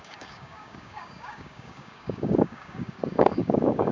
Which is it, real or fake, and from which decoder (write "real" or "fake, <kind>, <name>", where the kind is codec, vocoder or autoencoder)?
fake, codec, DAC